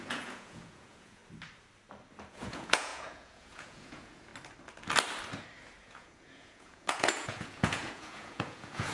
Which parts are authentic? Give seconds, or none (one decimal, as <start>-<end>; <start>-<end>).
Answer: 1.2-2.3; 4.3-5.8